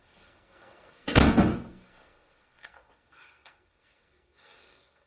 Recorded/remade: remade